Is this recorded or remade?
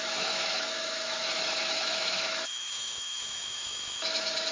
remade